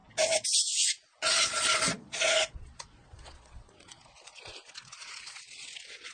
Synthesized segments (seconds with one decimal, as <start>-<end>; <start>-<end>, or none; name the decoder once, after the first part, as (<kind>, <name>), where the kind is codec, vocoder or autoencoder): 0.8-6.1 (vocoder, Vocos)